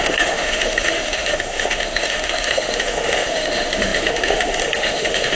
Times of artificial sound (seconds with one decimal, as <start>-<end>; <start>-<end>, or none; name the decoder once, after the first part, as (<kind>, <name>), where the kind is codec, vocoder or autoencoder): 0.0-5.3 (autoencoder, DAC-VAE)